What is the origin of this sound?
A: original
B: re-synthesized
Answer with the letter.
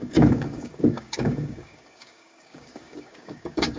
B